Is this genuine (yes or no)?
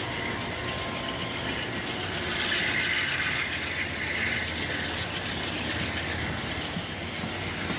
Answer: yes